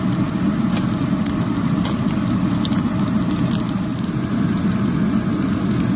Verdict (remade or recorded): recorded